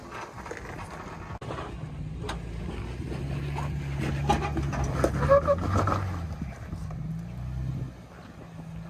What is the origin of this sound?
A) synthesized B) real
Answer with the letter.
B